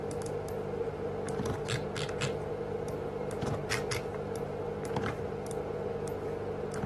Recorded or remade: recorded